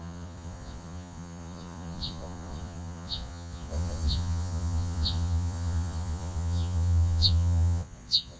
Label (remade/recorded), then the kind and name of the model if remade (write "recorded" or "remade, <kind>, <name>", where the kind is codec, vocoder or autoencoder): remade, vocoder, Vocos